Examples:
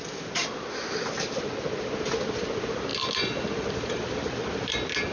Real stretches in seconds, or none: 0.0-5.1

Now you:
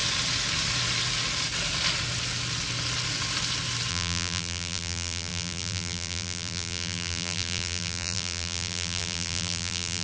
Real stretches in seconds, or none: 0.0-3.9